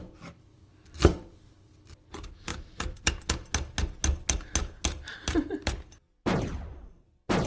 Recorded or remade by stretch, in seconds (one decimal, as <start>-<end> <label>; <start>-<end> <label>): 0.0-2.5 recorded; 2.5-3.1 remade; 3.1-7.5 recorded